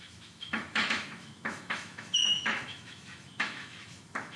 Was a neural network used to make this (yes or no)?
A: yes